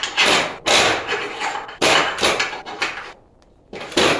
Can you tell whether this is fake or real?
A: real